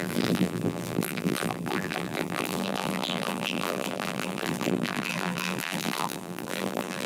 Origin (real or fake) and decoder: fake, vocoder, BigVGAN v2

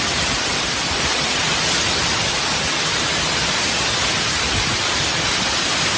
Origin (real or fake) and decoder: real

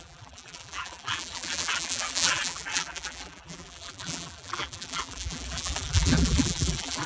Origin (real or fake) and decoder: fake, vocoder, BigVGAN v2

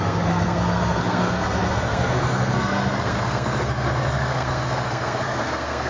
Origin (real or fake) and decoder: fake, codec, SNAC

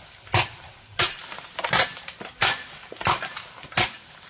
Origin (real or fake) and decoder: real